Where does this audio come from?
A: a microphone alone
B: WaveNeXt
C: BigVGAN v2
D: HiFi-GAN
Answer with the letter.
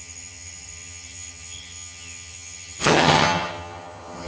D